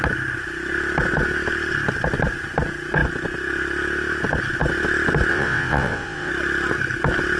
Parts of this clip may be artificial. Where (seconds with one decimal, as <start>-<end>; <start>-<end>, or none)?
5.3-6.3